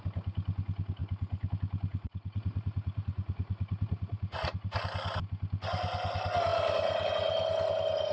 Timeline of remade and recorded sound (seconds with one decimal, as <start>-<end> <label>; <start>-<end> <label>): 0.0-1.9 recorded; 1.9-4.8 remade; 4.8-8.1 recorded